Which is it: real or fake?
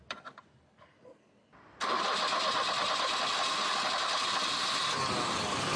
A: real